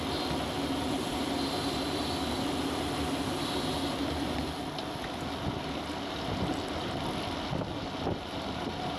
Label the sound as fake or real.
real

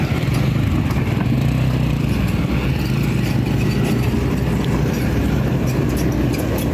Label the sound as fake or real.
real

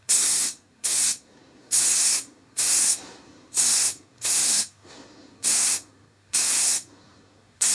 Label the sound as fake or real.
fake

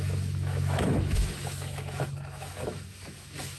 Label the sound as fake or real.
fake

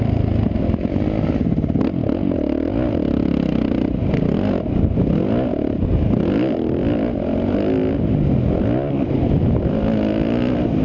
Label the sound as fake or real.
real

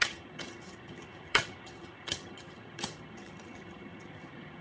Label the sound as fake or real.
fake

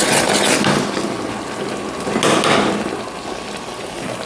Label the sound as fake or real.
real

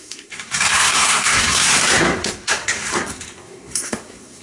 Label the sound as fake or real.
fake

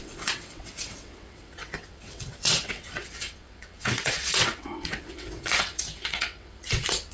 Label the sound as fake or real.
fake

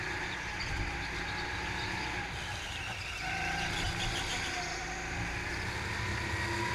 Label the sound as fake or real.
real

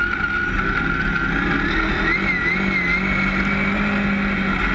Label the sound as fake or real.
real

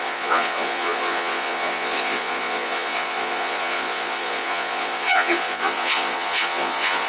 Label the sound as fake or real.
fake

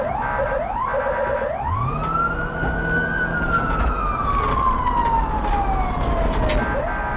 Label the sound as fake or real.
real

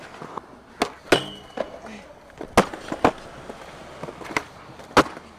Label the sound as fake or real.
real